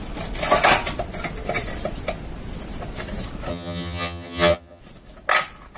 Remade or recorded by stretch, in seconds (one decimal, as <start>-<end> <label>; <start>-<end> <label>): 0.0-3.5 recorded; 3.5-4.8 remade; 4.8-5.8 recorded